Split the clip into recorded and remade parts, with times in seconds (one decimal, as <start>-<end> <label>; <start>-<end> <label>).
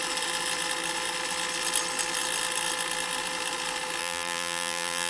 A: 0.0-4.0 recorded; 4.0-5.1 remade